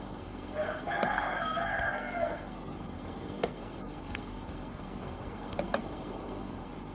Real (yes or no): no